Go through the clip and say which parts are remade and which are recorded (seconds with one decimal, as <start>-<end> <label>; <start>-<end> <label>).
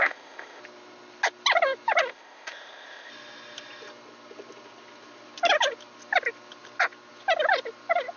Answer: 0.0-0.6 remade; 0.6-2.1 recorded; 2.1-3.1 remade; 3.1-8.2 recorded